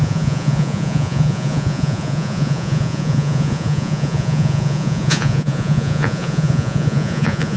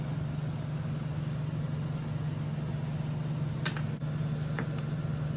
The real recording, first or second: second